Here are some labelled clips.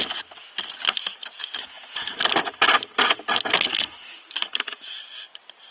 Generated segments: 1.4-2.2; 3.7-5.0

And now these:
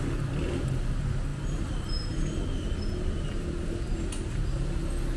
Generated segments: none

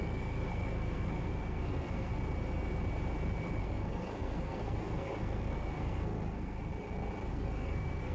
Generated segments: 0.0-2.1; 3.6-6.7; 7.3-8.1

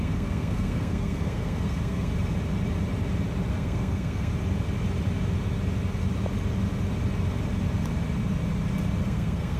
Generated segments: 0.0-2.1; 3.5-4.3; 9.0-9.6